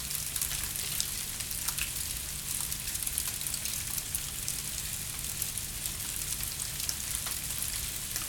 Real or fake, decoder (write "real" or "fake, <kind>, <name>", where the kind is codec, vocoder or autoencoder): real